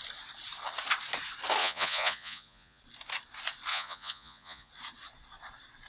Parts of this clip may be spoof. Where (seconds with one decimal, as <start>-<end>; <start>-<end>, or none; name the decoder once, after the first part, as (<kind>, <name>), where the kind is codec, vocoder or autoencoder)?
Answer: 1.6-2.8 (vocoder, Vocos); 3.7-4.7